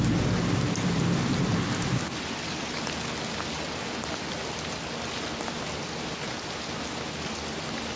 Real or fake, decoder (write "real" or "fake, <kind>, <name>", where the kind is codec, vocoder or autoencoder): real